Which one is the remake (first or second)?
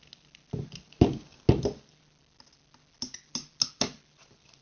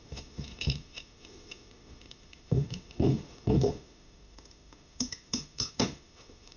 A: second